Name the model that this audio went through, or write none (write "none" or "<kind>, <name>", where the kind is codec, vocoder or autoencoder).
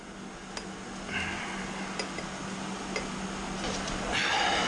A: none